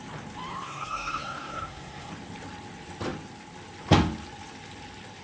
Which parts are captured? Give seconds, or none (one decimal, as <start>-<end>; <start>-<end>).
0.0-0.5; 2.1-5.2